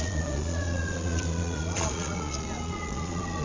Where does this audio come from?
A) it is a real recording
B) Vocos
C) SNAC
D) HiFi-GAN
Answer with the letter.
B